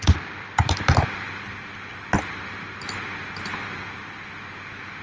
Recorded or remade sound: recorded